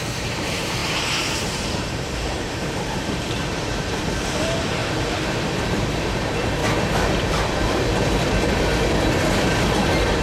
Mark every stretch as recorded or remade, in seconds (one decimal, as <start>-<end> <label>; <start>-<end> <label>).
0.0-6.6 remade; 6.6-10.2 recorded